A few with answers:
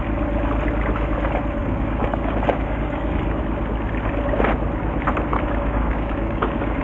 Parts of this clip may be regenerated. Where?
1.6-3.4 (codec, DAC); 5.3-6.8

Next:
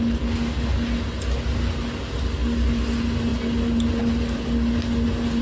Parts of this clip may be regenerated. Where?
none

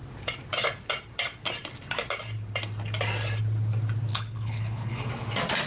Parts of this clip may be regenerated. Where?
4.1-5.1 (codec, HILCodec)

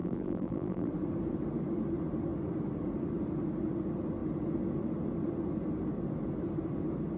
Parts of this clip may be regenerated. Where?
0.0-0.9 (vocoder, BigVGAN v2)